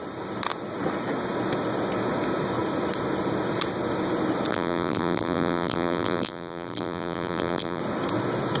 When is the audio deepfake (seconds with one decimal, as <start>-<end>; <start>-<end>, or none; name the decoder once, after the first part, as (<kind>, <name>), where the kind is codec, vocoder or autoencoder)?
4.5-7.8 (vocoder, BigVGAN v2)